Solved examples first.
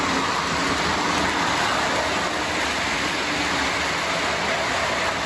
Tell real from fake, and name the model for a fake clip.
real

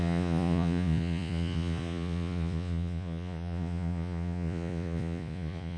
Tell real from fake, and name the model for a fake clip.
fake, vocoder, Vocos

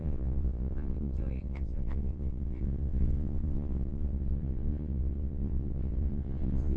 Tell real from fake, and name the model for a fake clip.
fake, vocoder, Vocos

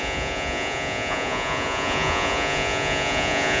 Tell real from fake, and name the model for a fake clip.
fake, vocoder, Vocos